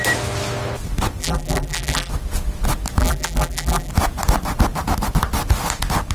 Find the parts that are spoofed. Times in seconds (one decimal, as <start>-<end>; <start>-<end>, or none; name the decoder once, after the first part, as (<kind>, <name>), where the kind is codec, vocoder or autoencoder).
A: 1.2-2.1 (vocoder, BigVGAN v2); 3.0-3.9